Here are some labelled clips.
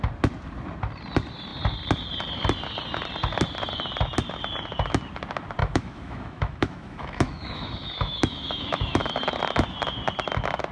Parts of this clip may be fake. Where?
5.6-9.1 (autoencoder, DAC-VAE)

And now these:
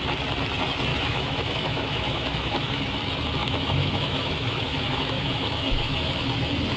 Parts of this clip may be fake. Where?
0.9-2.8 (autoencoder, DAC-VAE); 3.4-6.3

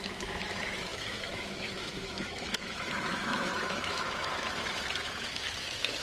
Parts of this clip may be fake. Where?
0.0-6.0 (autoencoder, DAC-VAE)

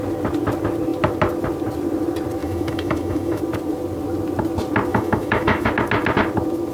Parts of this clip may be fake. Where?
2.4-3.4 (autoencoder, DAC-VAE); 4.9-5.7

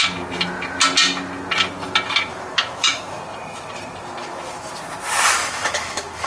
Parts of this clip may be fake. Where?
2.3-3.2 (autoencoder, DAC-VAE); 4.2-4.7; 5.4-6.3